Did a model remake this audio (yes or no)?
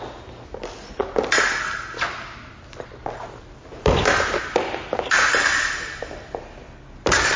no